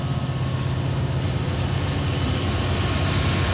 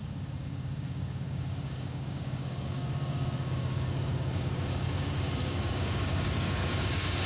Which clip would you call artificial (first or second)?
second